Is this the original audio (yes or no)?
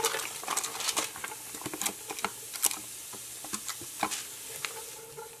yes